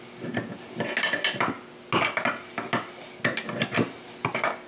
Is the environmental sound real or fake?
real